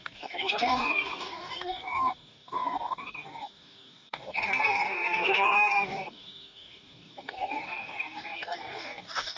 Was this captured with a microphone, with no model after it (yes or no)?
no